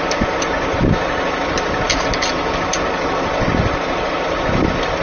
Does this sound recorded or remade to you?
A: recorded